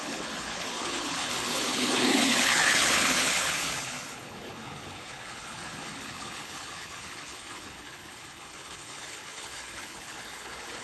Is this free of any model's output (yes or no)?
no